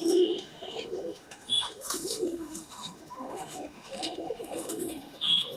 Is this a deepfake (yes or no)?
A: yes